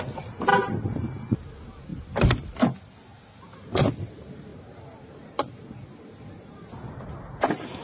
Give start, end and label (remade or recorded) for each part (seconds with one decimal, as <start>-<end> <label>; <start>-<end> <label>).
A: 0.0-7.8 recorded

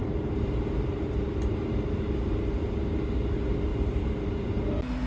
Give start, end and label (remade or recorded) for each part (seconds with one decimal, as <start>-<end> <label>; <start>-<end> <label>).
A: 0.0-2.5 remade; 2.5-3.7 recorded; 3.7-4.5 remade; 4.5-5.1 recorded

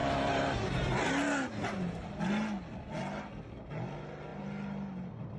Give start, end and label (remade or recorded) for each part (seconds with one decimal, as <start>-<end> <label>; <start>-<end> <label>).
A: 0.0-5.4 recorded

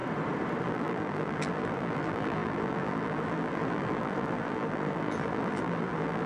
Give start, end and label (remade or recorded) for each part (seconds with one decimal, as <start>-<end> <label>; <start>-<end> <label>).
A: 0.0-0.6 recorded; 0.6-6.3 remade